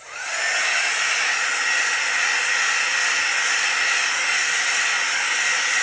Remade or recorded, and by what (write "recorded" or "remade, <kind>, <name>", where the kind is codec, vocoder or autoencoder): recorded